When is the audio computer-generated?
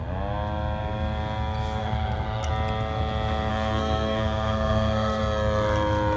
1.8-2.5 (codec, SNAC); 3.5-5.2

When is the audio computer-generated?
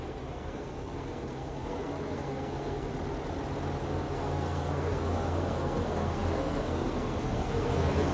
0.0-2.9 (codec, SNAC); 3.8-8.1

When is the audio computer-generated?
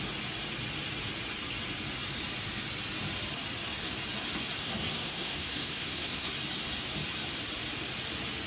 4.6-6.3 (codec, SNAC)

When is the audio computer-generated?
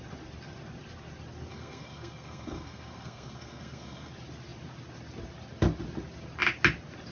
1.5-4.1 (codec, SNAC)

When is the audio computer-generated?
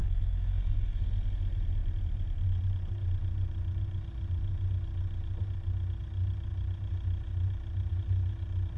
0.0-1.0 (codec, SNAC)